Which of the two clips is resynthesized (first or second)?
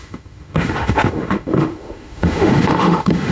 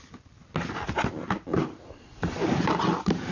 first